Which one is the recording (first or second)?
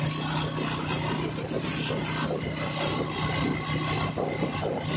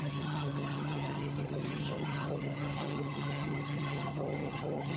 first